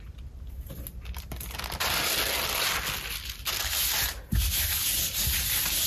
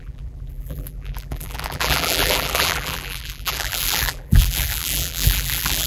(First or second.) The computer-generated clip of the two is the second